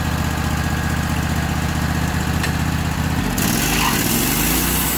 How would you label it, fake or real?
real